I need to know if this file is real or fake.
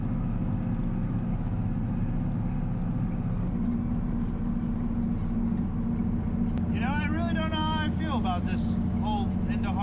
real